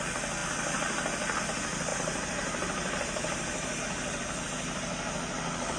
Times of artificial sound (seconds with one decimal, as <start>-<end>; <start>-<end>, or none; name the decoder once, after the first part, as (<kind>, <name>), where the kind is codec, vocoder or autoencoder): 1.9-3.8 (vocoder, BigVGAN v2)